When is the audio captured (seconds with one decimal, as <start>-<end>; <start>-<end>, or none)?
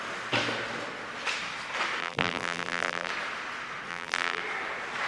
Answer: 0.0-2.0; 3.1-3.9; 4.4-5.1